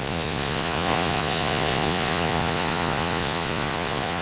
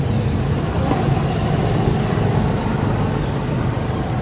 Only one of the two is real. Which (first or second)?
second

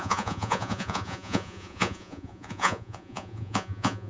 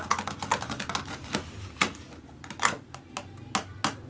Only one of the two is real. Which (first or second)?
second